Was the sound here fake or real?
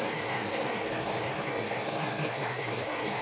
fake